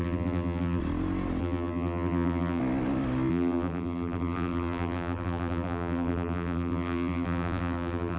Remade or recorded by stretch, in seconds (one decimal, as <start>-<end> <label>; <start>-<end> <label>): 0.0-0.8 remade; 0.8-1.4 recorded; 1.4-2.6 remade; 2.6-3.3 recorded; 3.3-8.2 remade